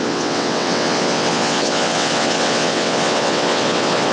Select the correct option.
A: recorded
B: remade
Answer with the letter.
B